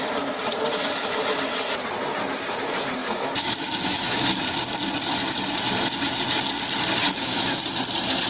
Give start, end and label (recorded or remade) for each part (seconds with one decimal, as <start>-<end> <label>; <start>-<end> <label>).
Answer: 0.0-3.0 recorded; 3.0-4.4 remade; 4.4-7.0 recorded; 7.0-7.6 remade; 7.6-8.3 recorded